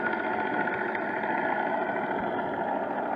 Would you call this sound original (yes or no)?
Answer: yes